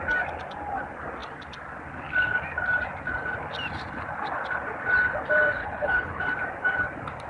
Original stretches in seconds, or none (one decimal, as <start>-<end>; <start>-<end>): 0.0-5.6; 6.2-7.3